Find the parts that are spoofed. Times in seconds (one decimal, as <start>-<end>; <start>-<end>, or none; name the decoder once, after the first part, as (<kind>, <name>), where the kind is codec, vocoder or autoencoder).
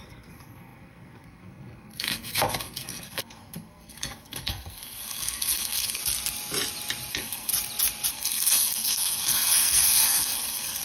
0.0-6.0 (codec, SNAC); 7.1-7.5; 8.1-10.8